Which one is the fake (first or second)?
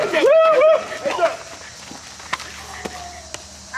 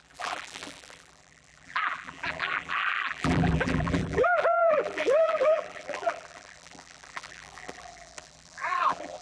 second